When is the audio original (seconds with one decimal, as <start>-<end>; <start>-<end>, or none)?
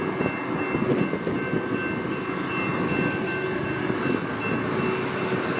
0.0-5.6